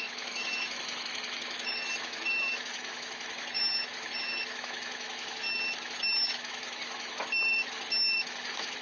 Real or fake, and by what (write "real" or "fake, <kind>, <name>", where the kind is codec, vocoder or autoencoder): fake, autoencoder, DAC-VAE